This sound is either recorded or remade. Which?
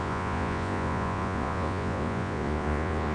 remade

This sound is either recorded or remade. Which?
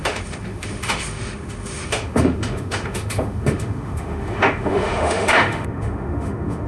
remade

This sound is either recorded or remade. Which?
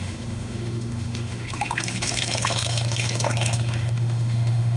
remade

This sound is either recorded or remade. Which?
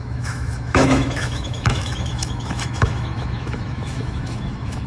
remade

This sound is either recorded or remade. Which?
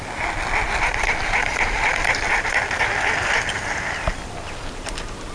recorded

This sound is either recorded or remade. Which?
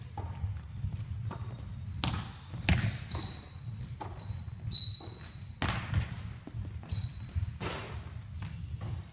recorded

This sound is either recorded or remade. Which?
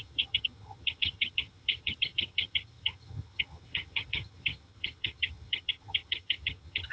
remade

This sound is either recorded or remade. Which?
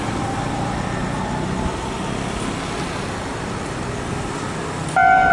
recorded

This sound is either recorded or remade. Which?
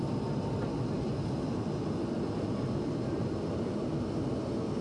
recorded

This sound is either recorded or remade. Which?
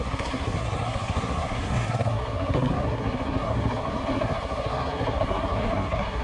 remade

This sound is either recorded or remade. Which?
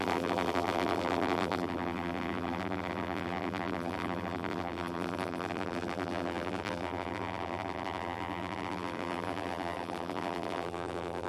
remade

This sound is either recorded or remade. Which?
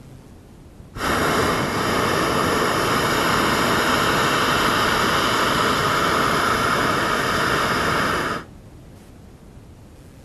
recorded